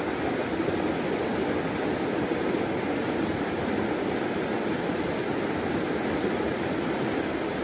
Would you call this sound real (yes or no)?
yes